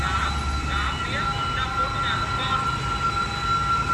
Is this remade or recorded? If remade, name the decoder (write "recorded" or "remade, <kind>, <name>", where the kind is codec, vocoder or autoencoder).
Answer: recorded